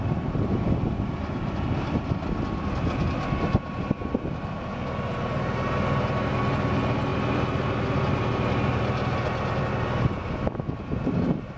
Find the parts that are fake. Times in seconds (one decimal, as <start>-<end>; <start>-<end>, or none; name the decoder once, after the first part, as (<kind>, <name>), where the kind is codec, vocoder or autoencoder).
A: none